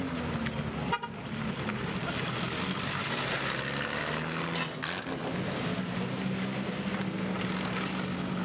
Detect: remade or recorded recorded